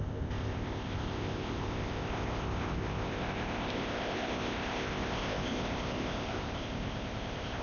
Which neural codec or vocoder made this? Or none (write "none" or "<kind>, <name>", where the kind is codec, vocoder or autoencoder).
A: codec, ZipCodec